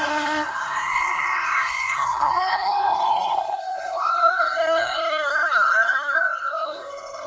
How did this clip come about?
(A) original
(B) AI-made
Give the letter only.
B